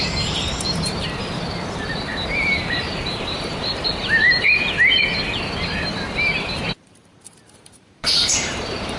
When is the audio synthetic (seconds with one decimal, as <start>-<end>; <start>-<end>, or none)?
0.0-9.0